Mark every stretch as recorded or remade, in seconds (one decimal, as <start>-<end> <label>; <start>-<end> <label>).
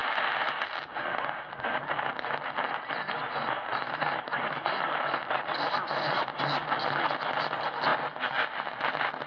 0.0-3.7 recorded; 3.7-5.9 remade; 5.9-9.3 recorded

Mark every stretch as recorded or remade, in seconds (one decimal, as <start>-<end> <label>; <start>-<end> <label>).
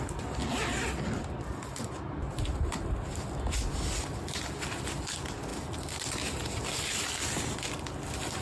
0.0-8.4 recorded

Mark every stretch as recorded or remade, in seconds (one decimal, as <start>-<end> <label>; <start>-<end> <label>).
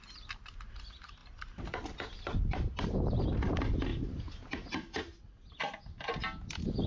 0.0-1.2 recorded; 1.2-3.2 remade; 3.2-3.9 recorded; 3.9-4.7 remade; 4.7-6.9 recorded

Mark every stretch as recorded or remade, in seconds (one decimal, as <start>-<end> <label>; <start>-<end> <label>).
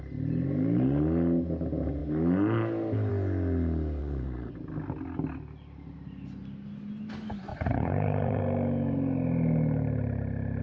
0.0-4.0 recorded; 4.0-4.5 remade; 4.5-7.5 recorded; 7.5-8.4 remade; 8.4-10.6 recorded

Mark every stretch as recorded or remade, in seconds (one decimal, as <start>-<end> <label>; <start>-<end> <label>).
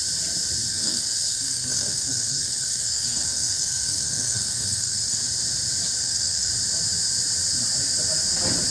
0.0-0.7 recorded; 0.7-5.2 remade; 5.2-6.0 recorded; 6.0-6.5 remade; 6.5-8.7 recorded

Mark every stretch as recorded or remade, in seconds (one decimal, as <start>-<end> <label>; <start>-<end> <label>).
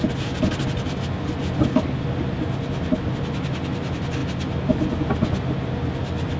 0.0-6.4 recorded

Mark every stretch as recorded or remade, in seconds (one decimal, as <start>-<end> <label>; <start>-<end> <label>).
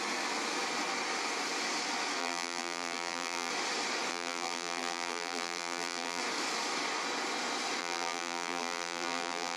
0.0-2.2 recorded; 2.2-3.5 remade; 3.5-4.1 recorded; 4.1-6.2 remade; 6.2-7.8 recorded; 7.8-9.6 remade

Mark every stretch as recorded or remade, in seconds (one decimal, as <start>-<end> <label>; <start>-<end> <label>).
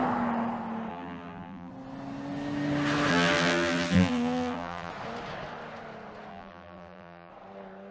0.0-0.9 recorded; 0.9-1.7 remade; 1.7-3.1 recorded; 3.1-4.9 remade; 4.9-6.3 recorded; 6.3-7.3 remade; 7.3-7.9 recorded